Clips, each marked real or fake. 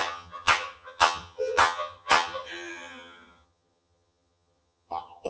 fake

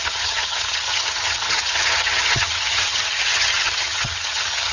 fake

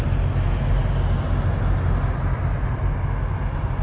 real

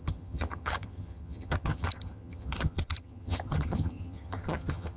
fake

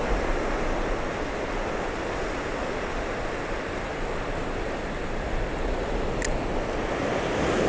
real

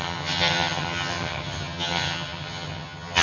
fake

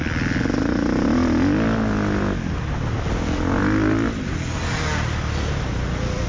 real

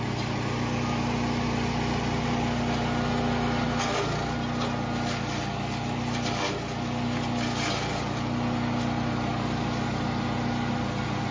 real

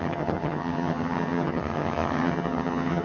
fake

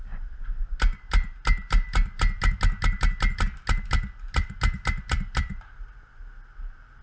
real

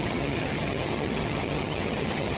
fake